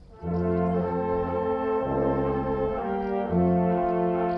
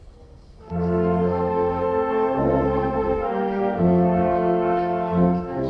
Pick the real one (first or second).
first